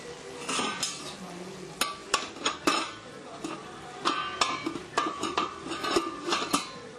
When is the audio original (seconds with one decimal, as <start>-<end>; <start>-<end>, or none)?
0.0-2.0; 4.0-4.8; 5.8-7.0